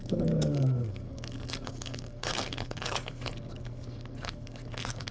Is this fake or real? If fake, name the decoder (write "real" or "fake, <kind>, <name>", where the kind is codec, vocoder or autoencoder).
fake, codec, SNAC